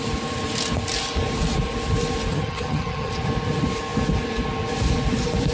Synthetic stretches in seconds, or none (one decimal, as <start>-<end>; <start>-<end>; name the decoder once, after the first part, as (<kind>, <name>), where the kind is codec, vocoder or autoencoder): 2.3-3.1 (vocoder, HiFi-GAN)